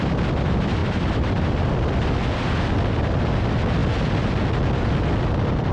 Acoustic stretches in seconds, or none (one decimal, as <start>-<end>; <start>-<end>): 0.0-0.8; 1.6-5.7